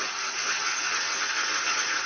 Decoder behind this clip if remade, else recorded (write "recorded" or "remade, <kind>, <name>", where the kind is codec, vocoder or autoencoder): remade, vocoder, Vocos